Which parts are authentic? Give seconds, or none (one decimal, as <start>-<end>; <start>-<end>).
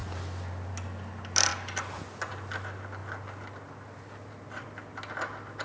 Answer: 0.0-5.6